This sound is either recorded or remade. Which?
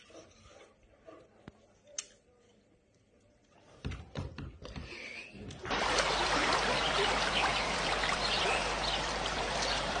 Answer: remade